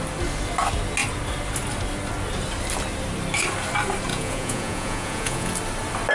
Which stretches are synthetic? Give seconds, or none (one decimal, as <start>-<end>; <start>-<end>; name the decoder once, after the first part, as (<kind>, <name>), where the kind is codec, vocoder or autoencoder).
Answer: 4.1-5.5 (vocoder, Vocos)